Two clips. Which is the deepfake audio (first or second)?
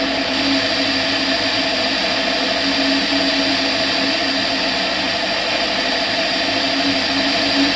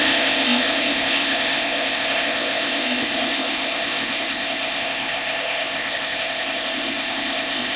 second